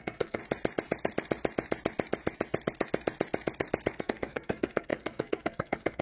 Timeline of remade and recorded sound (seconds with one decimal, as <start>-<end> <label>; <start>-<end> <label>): 0.0-0.4 remade; 0.4-4.0 recorded; 4.0-6.0 remade